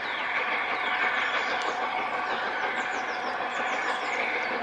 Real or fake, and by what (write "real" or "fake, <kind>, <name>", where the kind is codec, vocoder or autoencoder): real